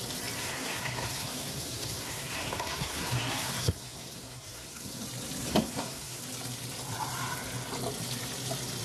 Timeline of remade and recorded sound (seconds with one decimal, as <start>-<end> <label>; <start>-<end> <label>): 0.0-0.4 recorded; 0.4-5.0 remade; 5.0-5.5 recorded; 5.5-6.2 remade; 6.2-8.8 recorded

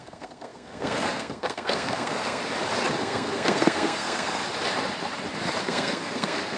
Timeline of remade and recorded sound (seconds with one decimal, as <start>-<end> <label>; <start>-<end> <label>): 0.0-2.4 remade; 2.4-3.0 recorded; 3.0-4.4 remade; 4.4-5.6 recorded; 5.6-6.6 remade

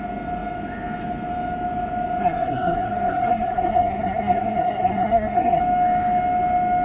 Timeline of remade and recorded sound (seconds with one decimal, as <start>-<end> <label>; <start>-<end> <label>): 0.0-2.2 recorded; 2.2-5.6 remade; 5.6-6.8 recorded

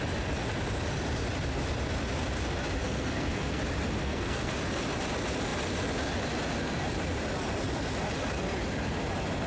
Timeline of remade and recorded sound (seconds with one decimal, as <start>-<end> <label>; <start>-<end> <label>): 0.0-2.8 recorded; 2.8-3.6 remade; 3.6-4.0 recorded; 4.0-4.5 remade; 4.5-9.5 recorded

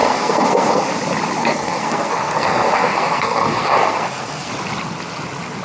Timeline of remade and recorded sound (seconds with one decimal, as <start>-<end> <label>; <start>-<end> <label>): 0.0-0.9 remade; 0.9-1.4 recorded; 1.4-4.5 remade; 4.5-5.6 recorded

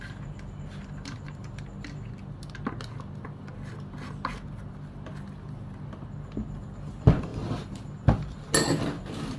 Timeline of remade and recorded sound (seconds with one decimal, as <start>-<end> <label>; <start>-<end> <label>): 0.0-9.4 recorded

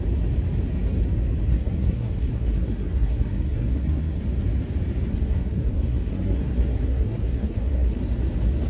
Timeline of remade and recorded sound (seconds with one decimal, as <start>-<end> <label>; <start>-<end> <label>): 0.0-1.5 recorded; 1.5-4.2 remade; 4.2-5.1 recorded; 5.1-8.0 remade; 8.0-8.7 recorded